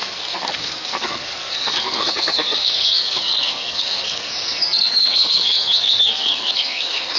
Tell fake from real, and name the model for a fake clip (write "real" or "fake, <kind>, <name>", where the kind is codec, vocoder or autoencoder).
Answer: fake, codec, SNAC